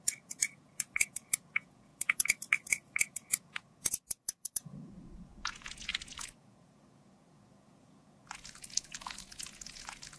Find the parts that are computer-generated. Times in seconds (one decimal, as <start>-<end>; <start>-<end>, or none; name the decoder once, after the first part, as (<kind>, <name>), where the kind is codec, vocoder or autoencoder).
0.0-10.2 (vocoder, Vocos)